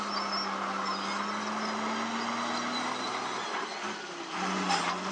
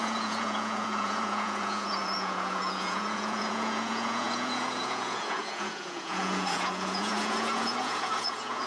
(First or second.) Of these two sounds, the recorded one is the first